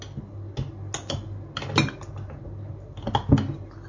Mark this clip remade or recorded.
recorded